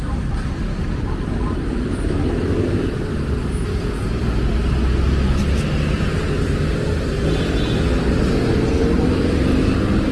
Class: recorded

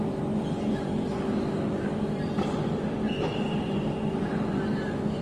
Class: recorded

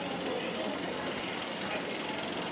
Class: recorded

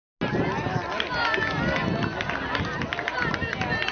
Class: recorded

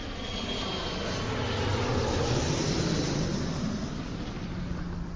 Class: recorded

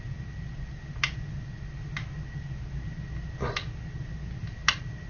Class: recorded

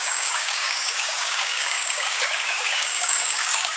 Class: remade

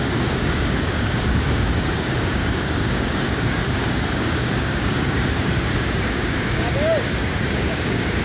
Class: remade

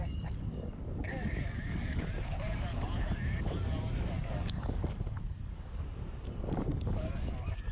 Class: remade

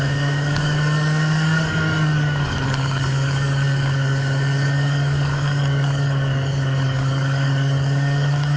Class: remade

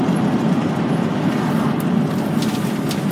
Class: recorded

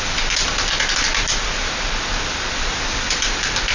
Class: recorded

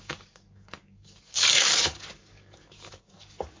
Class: remade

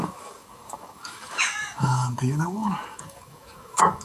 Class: remade